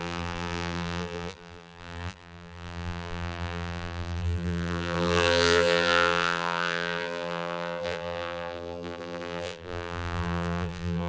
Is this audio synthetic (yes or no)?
yes